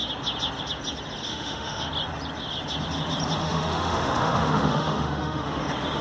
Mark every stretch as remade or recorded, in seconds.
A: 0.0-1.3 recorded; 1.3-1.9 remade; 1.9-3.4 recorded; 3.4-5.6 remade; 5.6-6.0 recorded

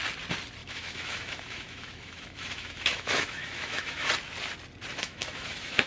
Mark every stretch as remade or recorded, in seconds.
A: 0.0-0.6 recorded; 0.6-4.1 remade; 4.1-4.9 recorded; 4.9-5.9 remade

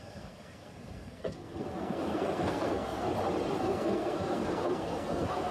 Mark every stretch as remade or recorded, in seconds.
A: 0.0-3.1 remade; 3.1-3.6 recorded; 3.6-5.5 remade

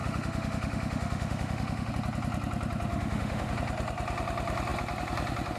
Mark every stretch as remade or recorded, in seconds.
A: 0.0-1.9 remade; 1.9-2.9 recorded; 2.9-3.5 remade; 3.5-5.6 recorded